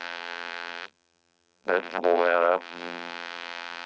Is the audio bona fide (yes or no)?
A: no